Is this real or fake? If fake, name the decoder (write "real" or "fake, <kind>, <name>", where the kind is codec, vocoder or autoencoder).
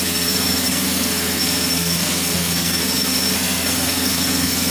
fake, codec, SNAC